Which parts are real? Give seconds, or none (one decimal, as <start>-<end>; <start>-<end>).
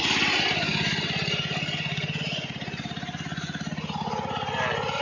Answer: 0.0-5.0